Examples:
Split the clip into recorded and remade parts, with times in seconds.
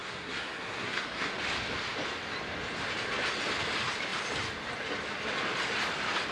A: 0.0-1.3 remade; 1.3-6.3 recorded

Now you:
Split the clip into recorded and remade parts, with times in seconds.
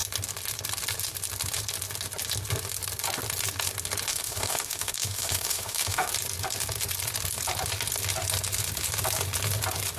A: 0.0-4.1 recorded; 4.1-6.1 remade; 6.1-10.0 recorded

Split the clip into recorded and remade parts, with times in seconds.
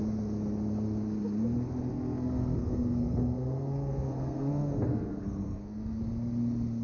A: 0.0-1.9 recorded; 1.9-6.0 remade; 6.0-6.8 recorded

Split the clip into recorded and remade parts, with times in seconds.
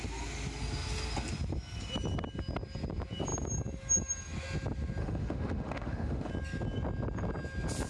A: 0.0-5.0 recorded; 5.0-6.3 remade; 6.3-7.9 recorded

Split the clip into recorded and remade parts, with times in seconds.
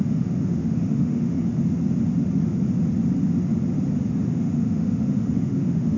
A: 0.0-1.5 remade; 1.5-4.3 recorded; 4.3-6.0 remade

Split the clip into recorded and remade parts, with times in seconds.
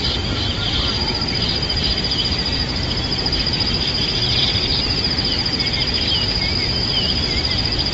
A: 0.0-1.7 recorded; 1.7-6.4 remade; 6.4-7.9 recorded